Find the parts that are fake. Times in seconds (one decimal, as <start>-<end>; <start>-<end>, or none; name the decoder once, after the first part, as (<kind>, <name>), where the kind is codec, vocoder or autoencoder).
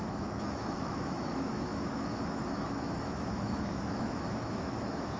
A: 0.0-5.2 (autoencoder, DAC-VAE)